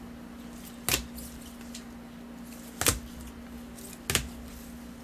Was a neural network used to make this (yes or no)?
no